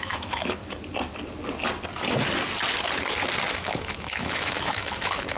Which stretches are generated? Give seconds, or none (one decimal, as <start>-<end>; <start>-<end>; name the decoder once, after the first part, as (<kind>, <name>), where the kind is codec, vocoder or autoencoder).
0.0-0.6 (autoencoder, DAC-VAE); 3.5-5.4